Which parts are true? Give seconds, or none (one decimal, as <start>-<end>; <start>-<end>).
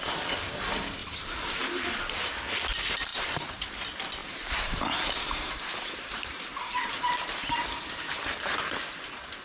0.0-1.0; 1.9-3.1; 3.6-4.2; 7.4-9.4